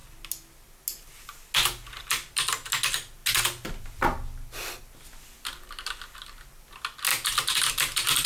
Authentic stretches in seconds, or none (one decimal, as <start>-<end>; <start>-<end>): 0.0-8.3